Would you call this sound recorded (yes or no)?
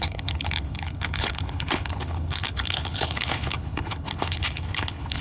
no